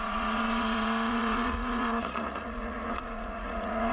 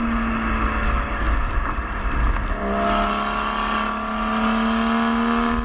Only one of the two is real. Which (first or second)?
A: second